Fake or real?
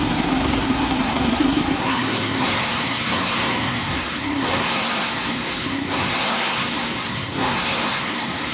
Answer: fake